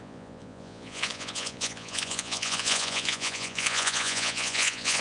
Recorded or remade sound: remade